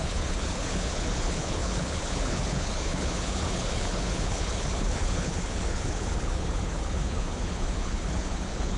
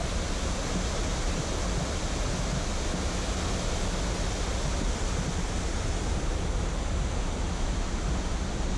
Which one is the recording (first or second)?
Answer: second